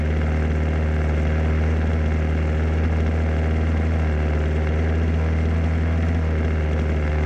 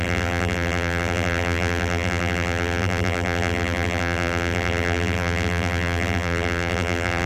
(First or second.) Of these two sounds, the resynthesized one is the second